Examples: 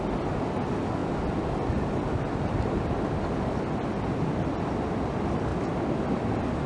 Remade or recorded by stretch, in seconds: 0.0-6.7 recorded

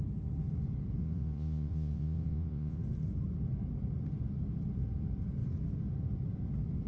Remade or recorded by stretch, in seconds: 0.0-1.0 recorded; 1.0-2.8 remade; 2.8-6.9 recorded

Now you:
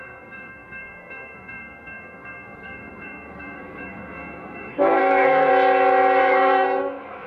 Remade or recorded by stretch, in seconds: 0.0-5.5 remade; 5.5-6.2 recorded; 6.2-7.3 remade

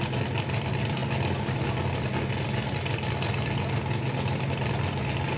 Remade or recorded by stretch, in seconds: 0.0-5.4 recorded